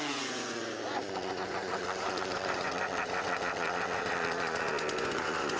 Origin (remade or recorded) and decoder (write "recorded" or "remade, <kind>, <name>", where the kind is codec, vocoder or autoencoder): remade, vocoder, Vocos